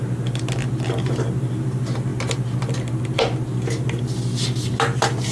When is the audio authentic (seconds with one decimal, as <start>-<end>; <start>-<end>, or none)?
0.0-5.3